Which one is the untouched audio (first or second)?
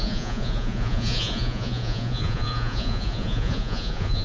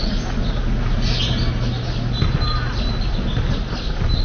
second